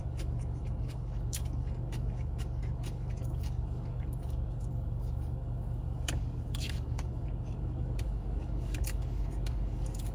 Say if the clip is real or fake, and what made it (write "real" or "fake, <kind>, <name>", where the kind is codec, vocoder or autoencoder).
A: fake, codec, DAC